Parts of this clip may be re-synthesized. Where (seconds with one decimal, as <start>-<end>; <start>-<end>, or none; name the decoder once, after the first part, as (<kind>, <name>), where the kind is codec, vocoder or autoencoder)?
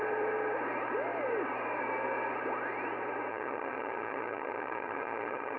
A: 3.3-5.6 (vocoder, HiFi-GAN)